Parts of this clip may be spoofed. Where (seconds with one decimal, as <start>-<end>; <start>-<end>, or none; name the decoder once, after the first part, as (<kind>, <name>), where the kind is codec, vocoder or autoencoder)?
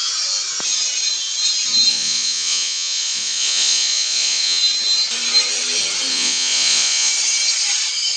1.9-4.6 (vocoder, Vocos); 6.1-7.1